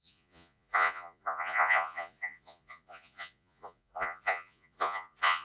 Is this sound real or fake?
fake